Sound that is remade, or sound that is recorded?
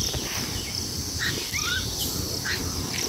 remade